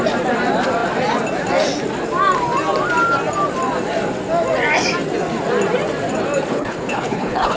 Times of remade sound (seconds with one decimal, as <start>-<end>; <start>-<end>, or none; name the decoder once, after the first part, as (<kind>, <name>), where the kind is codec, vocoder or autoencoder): 6.5-7.6 (codec, HILCodec)